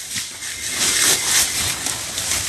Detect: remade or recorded recorded